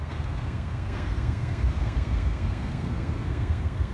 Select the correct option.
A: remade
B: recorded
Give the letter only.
A